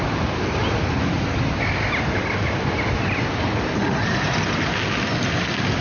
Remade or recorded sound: recorded